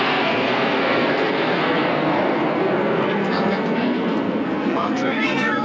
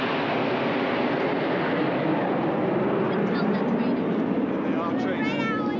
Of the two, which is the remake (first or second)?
first